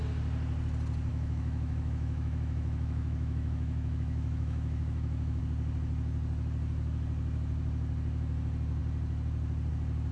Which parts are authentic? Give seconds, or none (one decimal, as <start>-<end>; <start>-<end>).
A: 0.0-1.1; 5.4-10.1